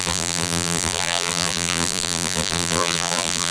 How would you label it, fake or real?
fake